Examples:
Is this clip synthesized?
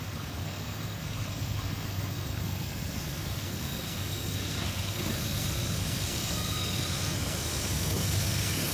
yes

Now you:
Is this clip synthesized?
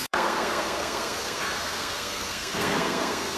yes